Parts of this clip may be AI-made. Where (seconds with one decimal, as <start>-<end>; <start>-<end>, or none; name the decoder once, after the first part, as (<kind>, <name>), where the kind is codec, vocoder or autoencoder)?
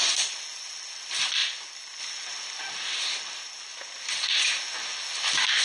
none